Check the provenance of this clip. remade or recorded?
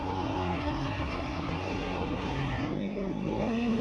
remade